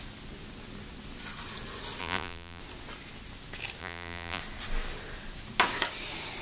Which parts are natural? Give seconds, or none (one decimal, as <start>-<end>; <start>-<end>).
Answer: 0.0-2.0; 2.6-3.8; 4.4-6.4